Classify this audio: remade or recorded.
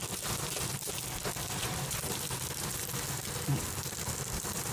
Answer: recorded